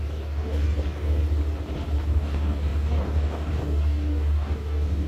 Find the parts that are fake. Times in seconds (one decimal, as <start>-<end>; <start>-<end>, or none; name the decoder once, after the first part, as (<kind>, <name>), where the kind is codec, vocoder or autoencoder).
0.0-1.2 (codec, DAC); 2.0-5.1